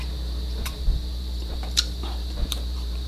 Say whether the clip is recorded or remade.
remade